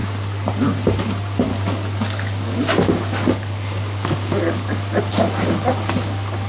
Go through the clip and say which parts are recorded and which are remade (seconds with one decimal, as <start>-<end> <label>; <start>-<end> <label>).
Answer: 0.0-1.5 recorded; 1.5-5.0 remade; 5.0-6.5 recorded

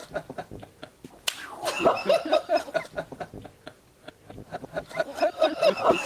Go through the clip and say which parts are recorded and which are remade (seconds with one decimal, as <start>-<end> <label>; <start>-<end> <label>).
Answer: 0.0-0.8 remade; 0.8-2.0 recorded; 2.0-2.7 remade; 2.7-6.1 recorded

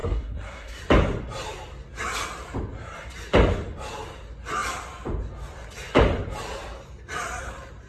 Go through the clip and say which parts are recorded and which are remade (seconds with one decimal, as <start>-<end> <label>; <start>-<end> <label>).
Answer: 0.0-0.8 remade; 0.8-7.9 recorded

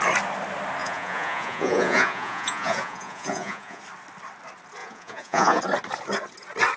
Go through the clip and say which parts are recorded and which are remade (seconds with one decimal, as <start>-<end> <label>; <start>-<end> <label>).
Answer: 0.0-0.8 recorded; 0.8-3.8 remade; 3.8-4.8 recorded; 4.8-5.6 remade; 5.6-6.8 recorded

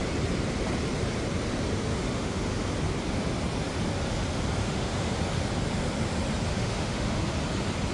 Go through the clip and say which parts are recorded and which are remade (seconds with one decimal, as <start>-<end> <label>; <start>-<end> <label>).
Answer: 0.0-1.9 recorded; 1.9-2.6 remade; 2.6-4.6 recorded; 4.6-5.2 remade; 5.2-6.5 recorded; 6.5-7.2 remade; 7.2-7.9 recorded

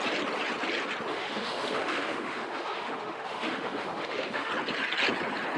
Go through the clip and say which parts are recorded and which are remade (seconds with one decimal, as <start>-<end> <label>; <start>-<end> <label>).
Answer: 0.0-1.1 recorded; 1.1-4.5 remade; 4.5-5.6 recorded

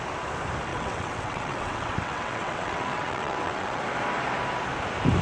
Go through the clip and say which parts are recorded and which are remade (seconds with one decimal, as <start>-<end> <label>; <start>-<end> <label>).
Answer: 0.0-0.7 recorded; 0.7-3.8 remade; 3.8-5.2 recorded